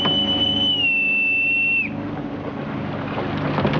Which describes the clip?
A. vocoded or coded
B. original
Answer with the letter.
B